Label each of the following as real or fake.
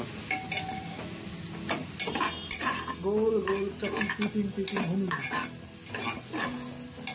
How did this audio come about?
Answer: real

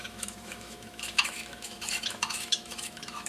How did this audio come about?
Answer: fake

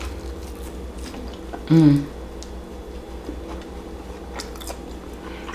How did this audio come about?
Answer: real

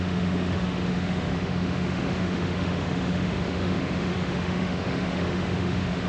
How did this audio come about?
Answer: fake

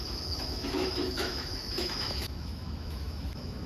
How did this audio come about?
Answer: fake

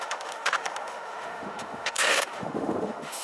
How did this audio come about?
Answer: fake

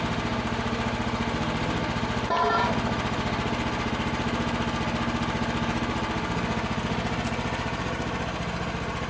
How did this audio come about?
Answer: real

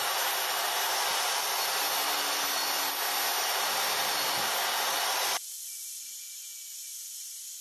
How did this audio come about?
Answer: real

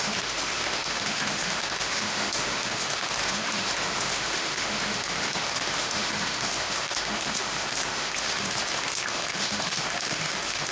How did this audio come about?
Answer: fake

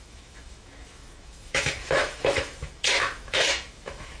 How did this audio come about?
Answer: fake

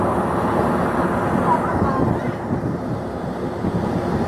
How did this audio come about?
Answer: real